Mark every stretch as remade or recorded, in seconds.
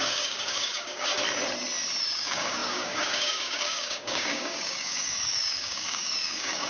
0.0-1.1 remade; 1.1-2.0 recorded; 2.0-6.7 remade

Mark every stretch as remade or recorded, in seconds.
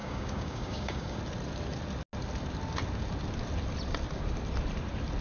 0.0-1.2 remade; 1.2-5.2 recorded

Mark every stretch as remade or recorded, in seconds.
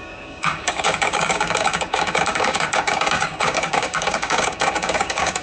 0.0-5.4 remade